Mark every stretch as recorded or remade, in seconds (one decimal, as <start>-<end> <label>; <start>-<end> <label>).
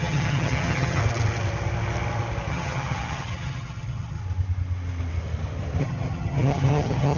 0.0-1.0 remade; 1.0-2.5 recorded; 2.5-4.2 remade; 4.2-5.8 recorded; 5.8-7.2 remade